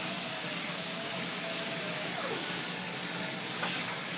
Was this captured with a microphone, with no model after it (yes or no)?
no